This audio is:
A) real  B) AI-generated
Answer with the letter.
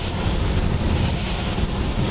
A